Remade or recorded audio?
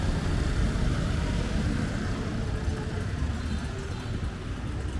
recorded